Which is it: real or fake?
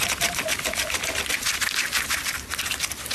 real